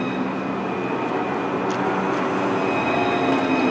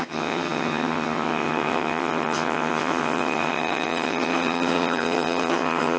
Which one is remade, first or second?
second